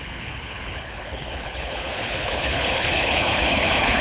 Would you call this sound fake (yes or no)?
yes